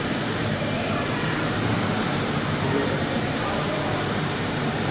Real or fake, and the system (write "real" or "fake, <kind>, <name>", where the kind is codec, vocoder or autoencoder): fake, vocoder, BigVGAN v2